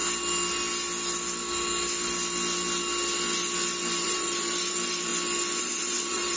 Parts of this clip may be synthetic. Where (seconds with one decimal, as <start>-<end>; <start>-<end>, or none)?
3.8-5.1; 5.6-6.4